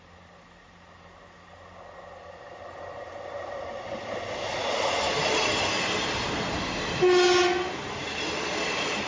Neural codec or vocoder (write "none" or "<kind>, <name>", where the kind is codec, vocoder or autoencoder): none